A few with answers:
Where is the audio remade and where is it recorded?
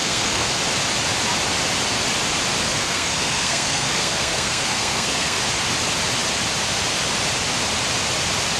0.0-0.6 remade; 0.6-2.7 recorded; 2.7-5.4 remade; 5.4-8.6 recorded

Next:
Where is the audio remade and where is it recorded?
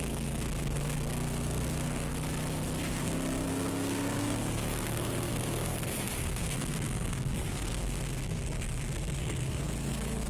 0.0-2.1 remade; 2.1-2.9 recorded; 2.9-10.3 remade